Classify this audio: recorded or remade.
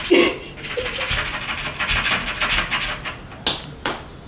recorded